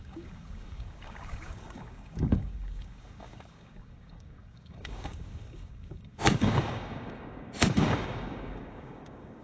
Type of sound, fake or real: fake